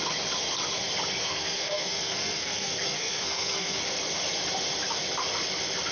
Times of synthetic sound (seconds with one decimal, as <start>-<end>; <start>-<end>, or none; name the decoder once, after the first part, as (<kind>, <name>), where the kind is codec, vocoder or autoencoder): 1.2-3.8 (codec, SNAC)